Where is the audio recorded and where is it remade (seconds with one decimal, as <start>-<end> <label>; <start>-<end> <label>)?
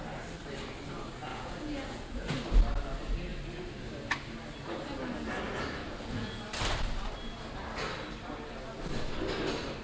0.0-1.3 recorded; 1.3-2.3 remade; 2.3-5.8 recorded; 5.8-6.4 remade; 6.4-9.8 recorded